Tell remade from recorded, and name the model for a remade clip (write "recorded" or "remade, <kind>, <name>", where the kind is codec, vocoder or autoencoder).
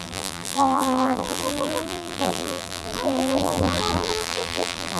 remade, vocoder, BigVGAN v2